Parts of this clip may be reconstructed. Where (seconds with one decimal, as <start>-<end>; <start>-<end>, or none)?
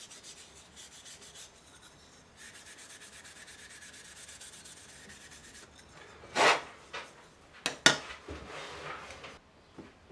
none